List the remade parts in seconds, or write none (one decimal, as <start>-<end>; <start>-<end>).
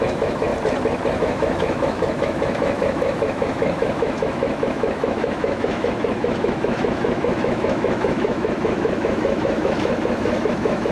0.0-0.5; 1.2-10.9